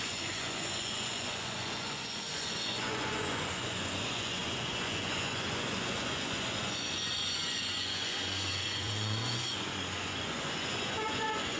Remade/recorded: remade